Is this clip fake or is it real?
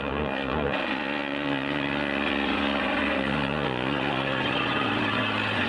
fake